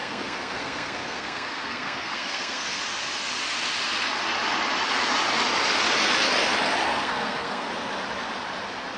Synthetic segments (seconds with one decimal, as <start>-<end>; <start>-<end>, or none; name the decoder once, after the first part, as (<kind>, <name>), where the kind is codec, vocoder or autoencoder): 0.0-2.8 (codec, SNAC); 6.9-7.7